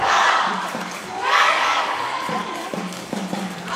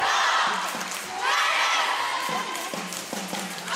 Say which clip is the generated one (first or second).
first